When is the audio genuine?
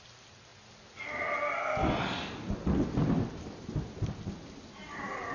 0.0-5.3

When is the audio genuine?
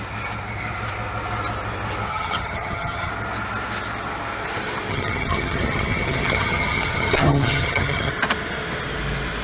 0.0-2.1; 3.1-4.9; 8.1-9.4